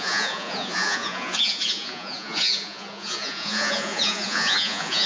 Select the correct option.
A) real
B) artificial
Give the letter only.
B